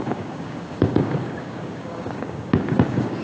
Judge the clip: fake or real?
fake